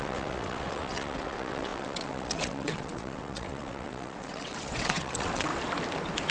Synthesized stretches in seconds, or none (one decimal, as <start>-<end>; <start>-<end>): 0.0-5.5